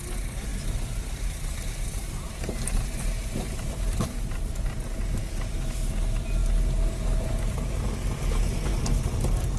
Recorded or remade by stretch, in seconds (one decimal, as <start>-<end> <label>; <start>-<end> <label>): 0.0-9.6 recorded